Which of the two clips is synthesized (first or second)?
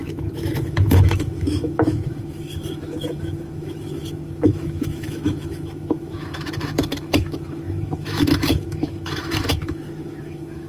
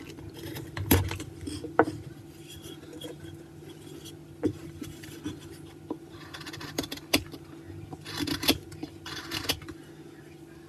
first